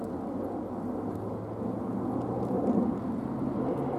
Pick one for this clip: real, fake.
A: real